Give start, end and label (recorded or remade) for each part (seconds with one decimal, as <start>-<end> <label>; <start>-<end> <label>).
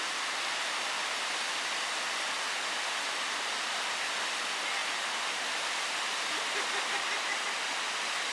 0.0-8.3 recorded